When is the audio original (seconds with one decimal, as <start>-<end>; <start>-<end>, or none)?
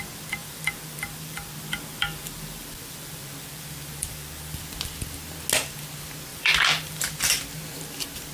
0.0-0.4; 4.6-6.3; 7.0-8.3